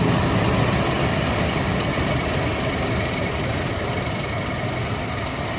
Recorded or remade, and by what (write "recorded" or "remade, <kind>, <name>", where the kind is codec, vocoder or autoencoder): recorded